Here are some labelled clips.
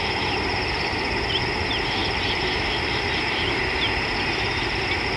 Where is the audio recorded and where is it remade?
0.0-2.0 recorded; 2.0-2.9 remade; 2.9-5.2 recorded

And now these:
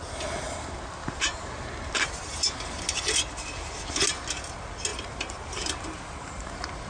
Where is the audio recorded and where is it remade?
0.0-4.9 recorded; 4.9-6.5 remade; 6.5-6.9 recorded

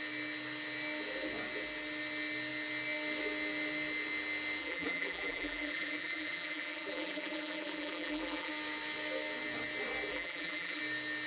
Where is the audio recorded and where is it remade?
0.0-4.6 recorded; 4.6-8.5 remade; 8.5-10.1 recorded; 10.1-10.8 remade; 10.8-11.3 recorded

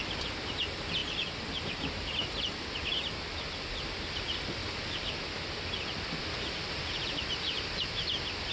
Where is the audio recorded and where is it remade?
0.0-8.5 recorded